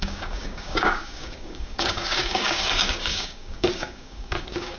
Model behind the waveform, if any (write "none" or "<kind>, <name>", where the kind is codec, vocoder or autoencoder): codec, DAC